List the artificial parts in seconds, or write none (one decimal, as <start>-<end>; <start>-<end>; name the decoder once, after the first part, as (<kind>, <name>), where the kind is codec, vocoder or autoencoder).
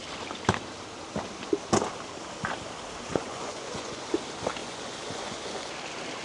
3.1-4.1 (vocoder, Vocos); 4.6-5.7